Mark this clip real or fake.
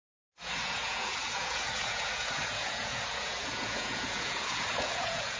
fake